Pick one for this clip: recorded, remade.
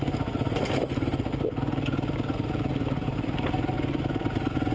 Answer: recorded